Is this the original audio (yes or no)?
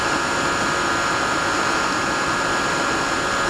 yes